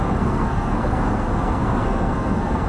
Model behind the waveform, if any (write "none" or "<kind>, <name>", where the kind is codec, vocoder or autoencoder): codec, SNAC